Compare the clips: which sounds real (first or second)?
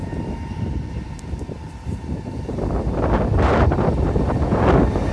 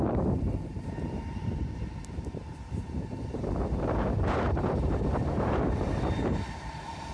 first